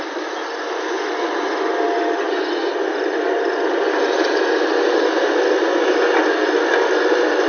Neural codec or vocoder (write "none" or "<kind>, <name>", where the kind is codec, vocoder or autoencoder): none